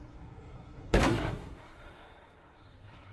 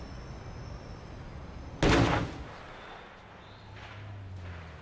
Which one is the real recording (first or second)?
second